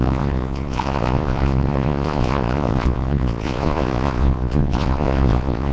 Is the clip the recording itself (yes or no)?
no